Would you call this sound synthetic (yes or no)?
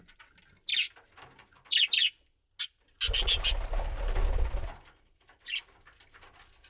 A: no